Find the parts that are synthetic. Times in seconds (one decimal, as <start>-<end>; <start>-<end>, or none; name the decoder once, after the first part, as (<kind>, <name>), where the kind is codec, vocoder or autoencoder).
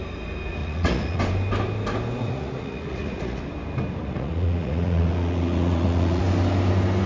0.6-1.2 (vocoder, Vocos); 2.2-3.4; 4.0-6.2